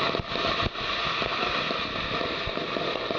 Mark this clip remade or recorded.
remade